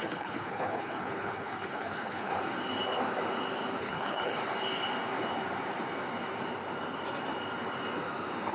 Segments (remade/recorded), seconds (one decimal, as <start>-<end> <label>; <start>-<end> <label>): 0.0-2.3 remade; 2.3-3.8 recorded; 3.8-4.4 remade; 4.4-8.5 recorded